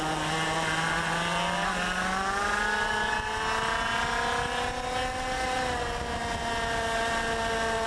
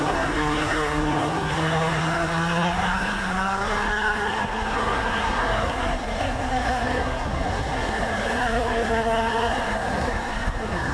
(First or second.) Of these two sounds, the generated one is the second